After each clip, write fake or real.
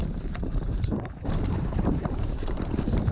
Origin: fake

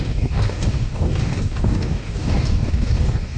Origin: fake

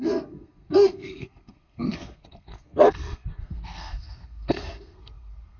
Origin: fake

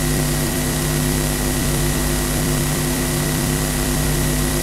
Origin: fake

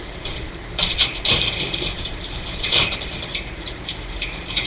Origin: fake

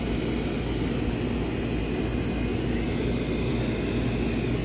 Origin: real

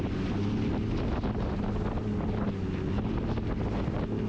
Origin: real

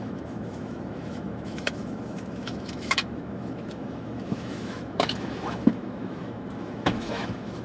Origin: fake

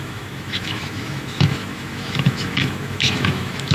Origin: fake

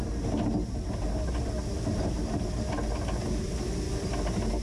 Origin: real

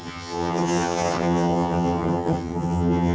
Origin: fake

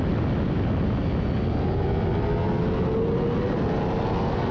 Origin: real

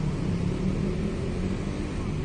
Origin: real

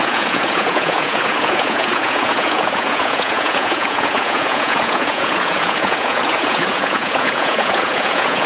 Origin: fake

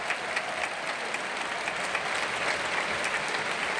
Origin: real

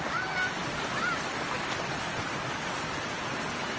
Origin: real